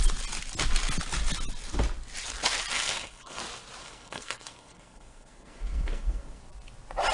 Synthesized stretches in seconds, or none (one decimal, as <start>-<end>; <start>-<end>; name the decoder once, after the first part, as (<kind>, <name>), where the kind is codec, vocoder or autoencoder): 2.7-3.4 (codec, SNAC); 3.8-6.4